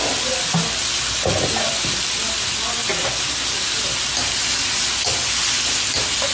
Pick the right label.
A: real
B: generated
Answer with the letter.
A